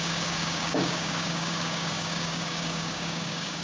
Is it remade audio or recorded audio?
remade